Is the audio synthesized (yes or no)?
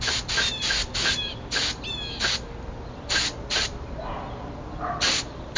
no